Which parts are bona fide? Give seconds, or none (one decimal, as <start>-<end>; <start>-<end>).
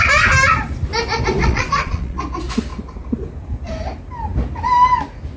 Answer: 0.0-1.4; 2.2-5.4